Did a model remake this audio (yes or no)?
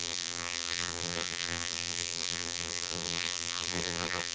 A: yes